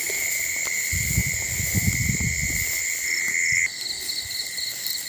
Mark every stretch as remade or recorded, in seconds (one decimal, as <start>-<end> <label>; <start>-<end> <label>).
0.0-1.2 remade; 1.2-4.3 recorded; 4.3-5.1 remade

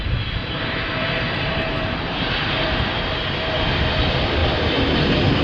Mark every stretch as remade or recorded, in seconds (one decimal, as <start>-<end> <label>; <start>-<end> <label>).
0.0-0.4 recorded; 0.4-3.6 remade; 3.6-5.4 recorded

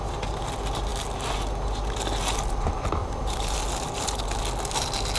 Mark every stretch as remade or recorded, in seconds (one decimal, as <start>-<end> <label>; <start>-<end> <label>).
0.0-3.0 recorded; 3.0-3.6 remade; 3.6-5.2 recorded